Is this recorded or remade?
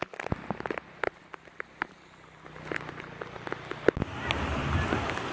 recorded